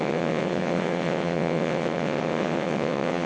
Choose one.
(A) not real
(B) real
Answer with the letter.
A